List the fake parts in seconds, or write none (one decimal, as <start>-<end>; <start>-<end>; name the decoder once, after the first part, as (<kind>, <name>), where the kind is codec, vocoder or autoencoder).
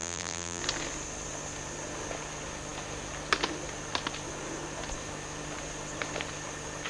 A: 0.0-0.6 (vocoder, BigVGAN v2)